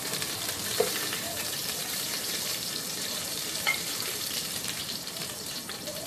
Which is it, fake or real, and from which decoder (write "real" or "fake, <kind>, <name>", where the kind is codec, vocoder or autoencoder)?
fake, vocoder, BigVGAN v2